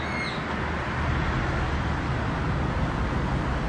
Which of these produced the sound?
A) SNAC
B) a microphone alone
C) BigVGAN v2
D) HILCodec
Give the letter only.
B